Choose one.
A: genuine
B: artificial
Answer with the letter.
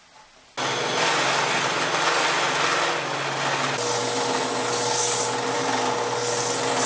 A